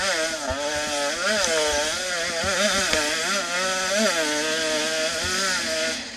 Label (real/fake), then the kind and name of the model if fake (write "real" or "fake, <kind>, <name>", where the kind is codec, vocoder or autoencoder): real